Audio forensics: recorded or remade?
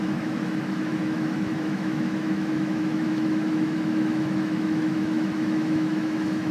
remade